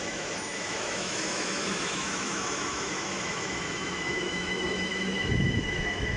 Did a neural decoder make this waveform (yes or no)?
yes